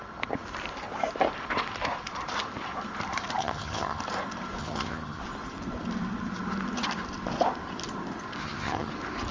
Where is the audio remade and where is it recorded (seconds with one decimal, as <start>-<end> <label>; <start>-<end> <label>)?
0.0-3.4 recorded; 3.4-4.0 remade; 4.0-4.6 recorded; 4.6-5.2 remade; 5.2-8.4 recorded; 8.4-8.9 remade; 8.9-9.3 recorded